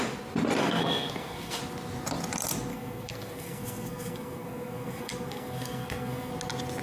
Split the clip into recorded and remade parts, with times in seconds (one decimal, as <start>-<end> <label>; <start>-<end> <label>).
0.0-0.6 recorded; 0.6-1.6 remade; 1.6-2.7 recorded; 2.7-6.3 remade; 6.3-6.8 recorded